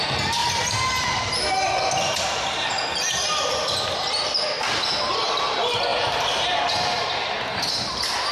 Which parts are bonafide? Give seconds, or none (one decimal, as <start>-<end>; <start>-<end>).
0.0-5.9; 7.1-8.3